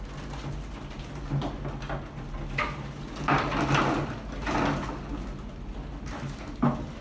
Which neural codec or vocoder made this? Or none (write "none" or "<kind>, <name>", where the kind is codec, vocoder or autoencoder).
none